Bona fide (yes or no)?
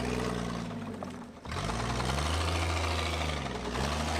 yes